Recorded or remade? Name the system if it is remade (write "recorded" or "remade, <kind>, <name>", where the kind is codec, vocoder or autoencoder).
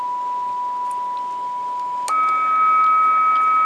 recorded